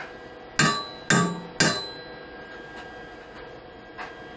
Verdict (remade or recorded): recorded